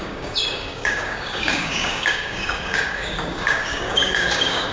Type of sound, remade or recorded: remade